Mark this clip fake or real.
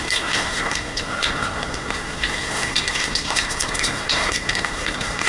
fake